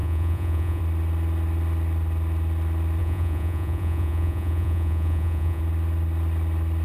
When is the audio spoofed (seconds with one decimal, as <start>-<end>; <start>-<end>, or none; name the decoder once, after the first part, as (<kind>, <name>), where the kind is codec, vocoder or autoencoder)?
0.0-0.8 (vocoder, Vocos); 3.0-5.6